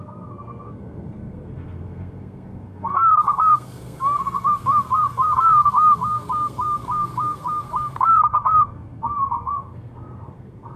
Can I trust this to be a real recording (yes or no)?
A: no